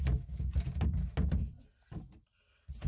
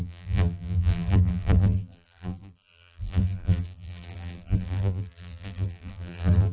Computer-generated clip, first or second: second